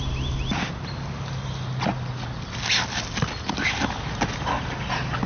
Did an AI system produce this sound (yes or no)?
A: no